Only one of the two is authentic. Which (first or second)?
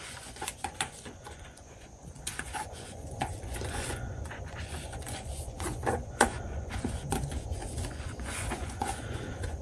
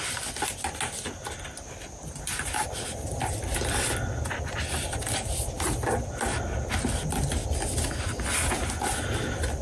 second